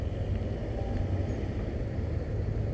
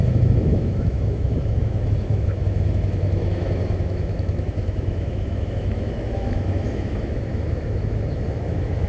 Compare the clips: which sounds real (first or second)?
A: first